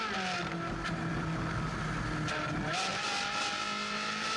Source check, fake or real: real